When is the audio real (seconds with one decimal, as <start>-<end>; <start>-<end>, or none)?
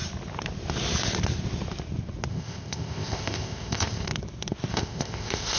0.0-2.3; 4.1-4.7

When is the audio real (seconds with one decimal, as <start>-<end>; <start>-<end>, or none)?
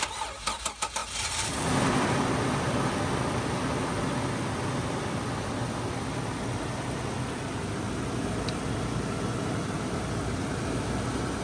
0.0-11.4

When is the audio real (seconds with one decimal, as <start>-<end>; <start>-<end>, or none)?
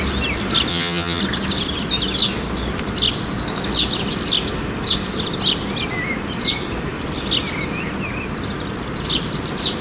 0.0-0.7; 1.2-9.8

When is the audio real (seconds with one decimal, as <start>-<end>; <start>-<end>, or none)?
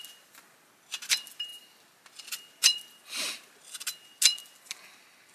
0.0-5.3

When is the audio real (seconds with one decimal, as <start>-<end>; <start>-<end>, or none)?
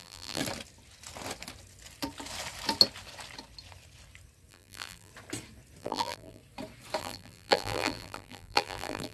0.4-4.5; 5.1-5.8; 6.4-7.0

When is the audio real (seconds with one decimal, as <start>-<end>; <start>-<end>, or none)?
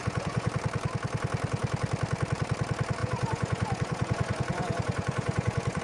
0.5-3.0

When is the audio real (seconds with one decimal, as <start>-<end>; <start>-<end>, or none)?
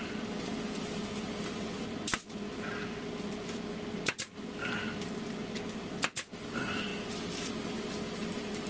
0.0-8.7